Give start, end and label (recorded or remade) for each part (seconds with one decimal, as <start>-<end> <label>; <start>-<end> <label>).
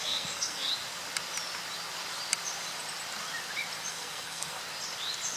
0.0-0.7 remade; 0.7-3.9 recorded; 3.9-4.6 remade; 4.6-5.4 recorded